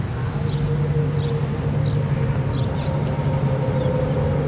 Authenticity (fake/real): real